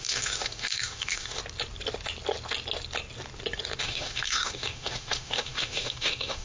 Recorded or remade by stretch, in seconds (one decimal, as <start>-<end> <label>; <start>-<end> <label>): 0.0-1.4 remade; 1.4-3.8 recorded; 3.8-6.4 remade